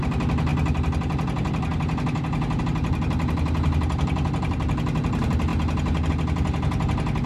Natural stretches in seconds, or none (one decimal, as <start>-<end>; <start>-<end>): 0.0-7.3